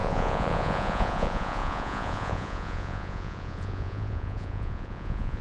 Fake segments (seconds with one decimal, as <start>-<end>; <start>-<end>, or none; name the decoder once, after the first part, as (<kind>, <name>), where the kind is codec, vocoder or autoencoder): 0.0-5.4 (vocoder, Vocos)